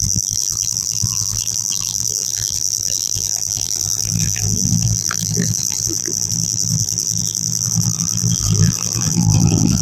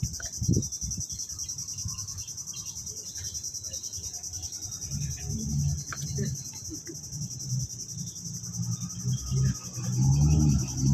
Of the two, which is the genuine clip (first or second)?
second